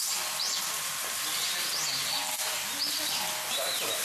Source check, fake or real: real